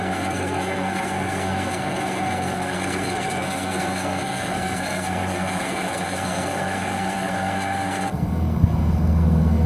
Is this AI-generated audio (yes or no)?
yes